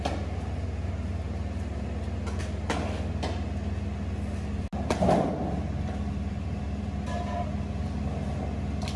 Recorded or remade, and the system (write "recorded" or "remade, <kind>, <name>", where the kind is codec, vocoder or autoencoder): recorded